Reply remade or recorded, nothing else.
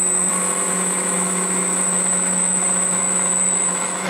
remade